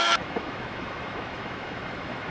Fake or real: fake